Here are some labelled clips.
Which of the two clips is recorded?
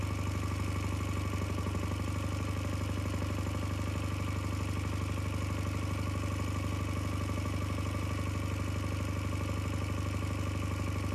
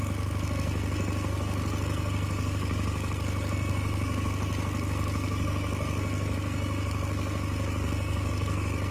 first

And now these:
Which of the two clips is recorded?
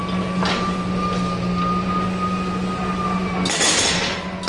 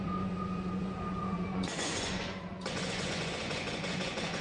first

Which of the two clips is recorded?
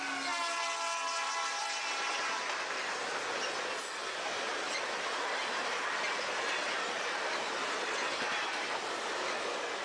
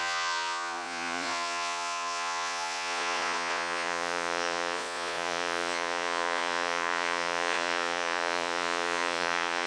first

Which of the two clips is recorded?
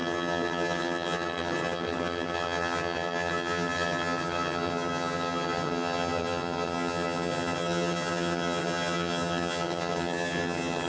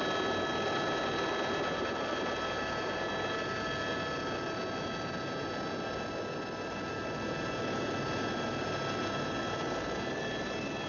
second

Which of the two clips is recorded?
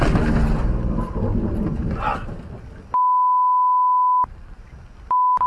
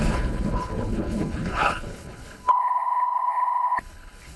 first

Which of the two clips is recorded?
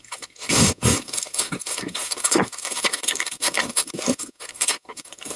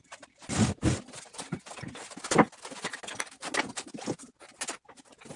second